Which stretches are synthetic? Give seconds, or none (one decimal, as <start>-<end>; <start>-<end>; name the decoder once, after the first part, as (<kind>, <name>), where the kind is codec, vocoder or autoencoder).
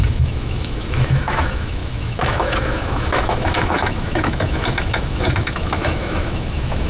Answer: 0.0-6.9 (autoencoder, DAC-VAE)